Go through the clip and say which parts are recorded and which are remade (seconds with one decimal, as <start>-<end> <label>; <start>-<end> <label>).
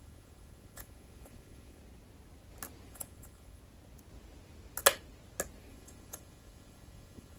0.0-1.8 remade; 1.8-2.9 recorded; 2.9-3.6 remade; 3.6-5.7 recorded; 5.7-7.4 remade